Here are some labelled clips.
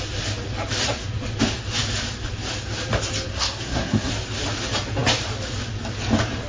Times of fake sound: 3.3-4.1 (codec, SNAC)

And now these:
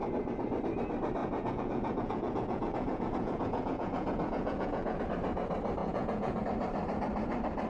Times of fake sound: 1.2-5.0 (vocoder, Vocos); 5.8-6.4

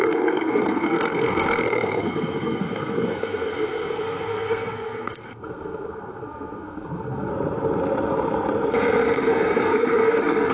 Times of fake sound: 0.0-7.3 (codec, SNAC); 9.1-10.5

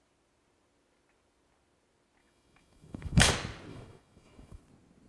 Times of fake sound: 2.2-3.3 (autoencoder, DAC-VAE); 3.7-4.6